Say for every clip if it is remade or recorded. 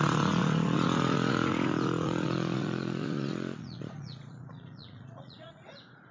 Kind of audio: remade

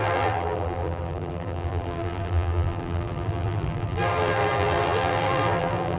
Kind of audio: remade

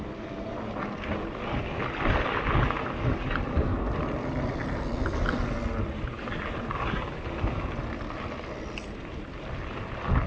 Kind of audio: recorded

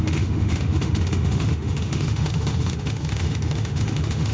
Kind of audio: remade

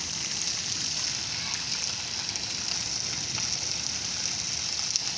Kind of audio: recorded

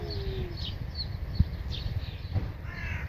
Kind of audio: recorded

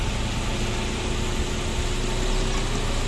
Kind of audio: recorded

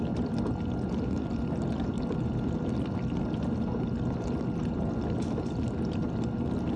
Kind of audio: recorded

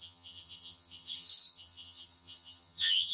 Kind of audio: remade